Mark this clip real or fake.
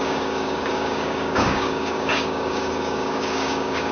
fake